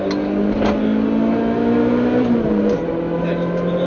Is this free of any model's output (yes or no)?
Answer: yes